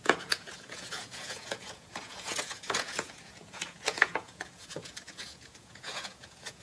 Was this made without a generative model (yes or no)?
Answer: no